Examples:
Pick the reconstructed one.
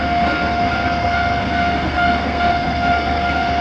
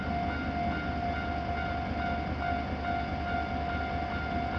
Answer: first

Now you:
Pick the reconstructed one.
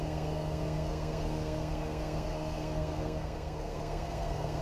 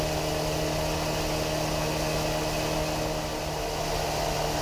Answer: first